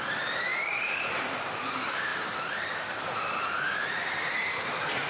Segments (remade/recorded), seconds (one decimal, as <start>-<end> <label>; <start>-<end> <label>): 0.0-5.1 remade